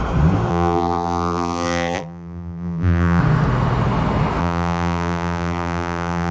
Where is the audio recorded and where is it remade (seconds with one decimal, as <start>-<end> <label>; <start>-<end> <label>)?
0.0-0.5 recorded; 0.5-3.2 remade; 3.2-4.4 recorded; 4.4-6.3 remade